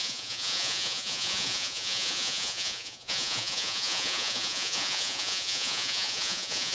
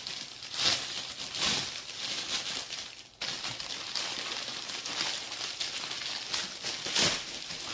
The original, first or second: second